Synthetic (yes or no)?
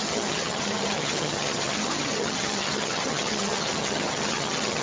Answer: yes